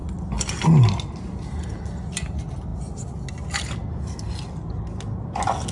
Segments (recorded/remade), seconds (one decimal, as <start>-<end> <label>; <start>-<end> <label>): 0.0-5.7 recorded